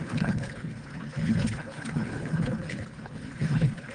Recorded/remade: remade